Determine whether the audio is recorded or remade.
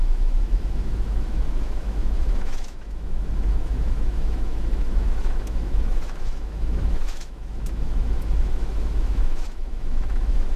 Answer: remade